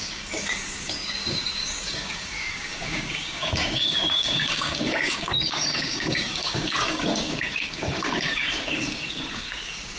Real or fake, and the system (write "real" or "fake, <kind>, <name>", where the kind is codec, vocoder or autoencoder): fake, codec, DAC